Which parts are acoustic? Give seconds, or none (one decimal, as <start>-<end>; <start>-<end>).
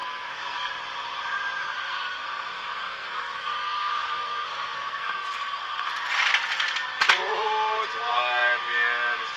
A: 0.7-1.6; 5.9-9.4